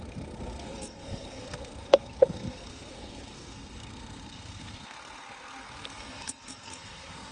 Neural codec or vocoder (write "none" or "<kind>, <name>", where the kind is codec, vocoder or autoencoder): codec, SNAC